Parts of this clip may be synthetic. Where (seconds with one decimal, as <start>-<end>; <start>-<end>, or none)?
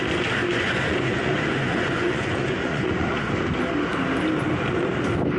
0.4-3.3